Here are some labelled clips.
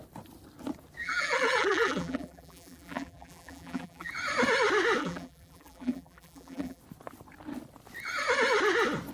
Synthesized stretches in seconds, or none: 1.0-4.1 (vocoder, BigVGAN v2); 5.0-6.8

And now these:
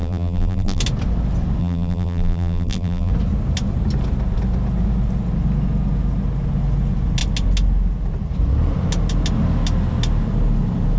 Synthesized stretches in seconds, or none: 0.0-0.8 (vocoder, BigVGAN v2); 1.6-3.1

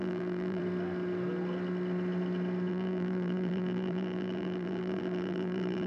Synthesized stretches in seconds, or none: 0.0-0.6 (vocoder, BigVGAN v2); 2.7-5.9

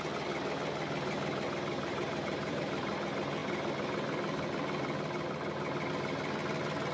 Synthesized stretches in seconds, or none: 1.7-2.9 (vocoder, BigVGAN v2)

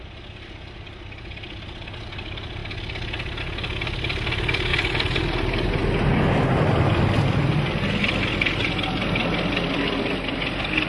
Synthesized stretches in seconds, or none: 4.7-5.2 (vocoder, BigVGAN v2)

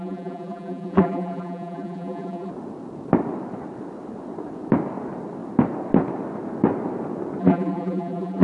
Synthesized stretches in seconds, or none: 0.0-2.5 (vocoder, BigVGAN v2); 7.4-8.4

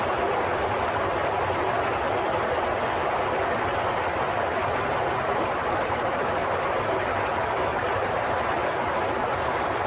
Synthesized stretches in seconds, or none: 4.5-8.4 (vocoder, BigVGAN v2)

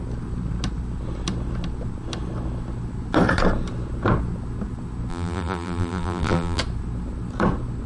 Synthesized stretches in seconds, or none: 5.1-6.6 (vocoder, BigVGAN v2)